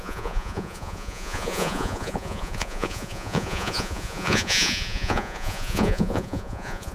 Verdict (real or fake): fake